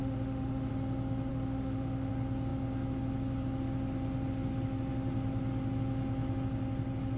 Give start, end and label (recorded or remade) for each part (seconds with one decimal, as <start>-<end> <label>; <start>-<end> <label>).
0.0-0.7 remade; 0.7-1.3 recorded; 1.3-2.1 remade; 2.1-7.2 recorded